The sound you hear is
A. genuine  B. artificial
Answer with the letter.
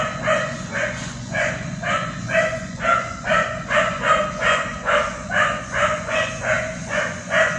B